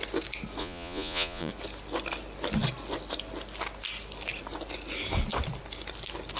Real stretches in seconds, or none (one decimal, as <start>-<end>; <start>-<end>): 0.0-0.6; 1.5-6.4